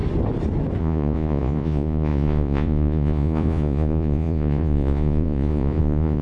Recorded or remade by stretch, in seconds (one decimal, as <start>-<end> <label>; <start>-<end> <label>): 0.0-0.8 recorded; 0.8-6.2 remade